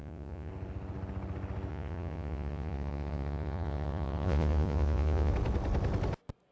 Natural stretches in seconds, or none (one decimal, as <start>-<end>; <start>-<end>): 0.5-1.7; 5.3-6.5